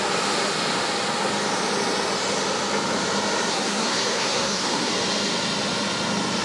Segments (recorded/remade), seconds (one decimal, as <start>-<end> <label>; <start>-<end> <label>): 0.0-3.5 recorded; 3.5-4.9 remade; 4.9-6.4 recorded

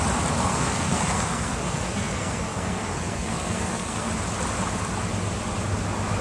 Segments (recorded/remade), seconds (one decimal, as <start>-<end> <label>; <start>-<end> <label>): 0.0-0.4 recorded; 0.4-4.1 remade; 4.1-6.2 recorded

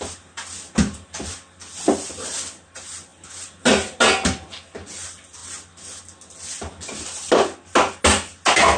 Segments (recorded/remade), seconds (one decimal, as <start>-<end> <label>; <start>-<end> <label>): 0.0-8.8 recorded

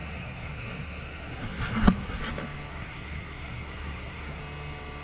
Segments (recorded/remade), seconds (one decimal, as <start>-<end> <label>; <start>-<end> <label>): 0.0-2.2 remade; 2.2-2.7 recorded; 2.7-4.4 remade; 4.4-5.0 recorded

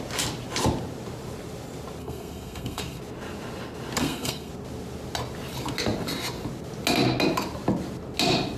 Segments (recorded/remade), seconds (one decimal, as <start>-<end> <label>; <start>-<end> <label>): 0.0-2.0 recorded; 2.0-3.0 remade; 3.0-4.0 recorded; 4.0-4.5 remade; 4.5-8.6 recorded